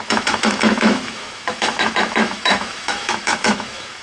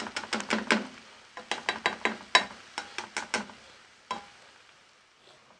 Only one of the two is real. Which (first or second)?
second